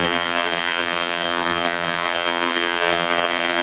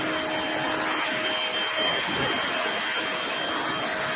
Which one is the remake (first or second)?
first